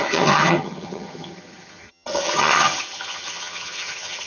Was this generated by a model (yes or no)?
yes